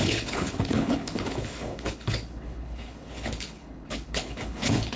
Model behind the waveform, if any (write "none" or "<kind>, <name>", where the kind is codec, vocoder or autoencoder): codec, HILCodec